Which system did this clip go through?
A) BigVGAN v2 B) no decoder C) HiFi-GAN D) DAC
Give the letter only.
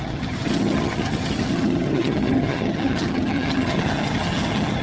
C